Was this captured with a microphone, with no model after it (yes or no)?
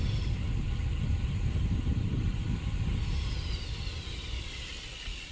yes